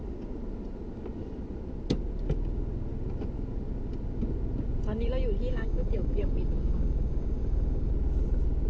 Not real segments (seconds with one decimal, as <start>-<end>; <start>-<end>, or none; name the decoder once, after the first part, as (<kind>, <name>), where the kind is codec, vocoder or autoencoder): 5.5-7.9 (codec, DAC)